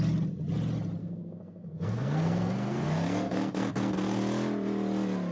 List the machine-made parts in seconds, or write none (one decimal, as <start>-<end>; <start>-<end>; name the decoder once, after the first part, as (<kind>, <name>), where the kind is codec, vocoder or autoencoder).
1.0-4.2 (codec, SNAC)